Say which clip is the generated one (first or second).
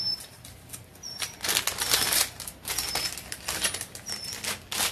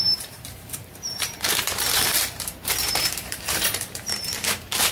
second